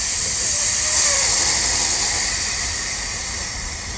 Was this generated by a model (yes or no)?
yes